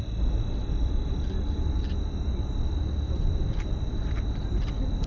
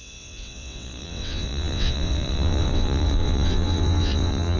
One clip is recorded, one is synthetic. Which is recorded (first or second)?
first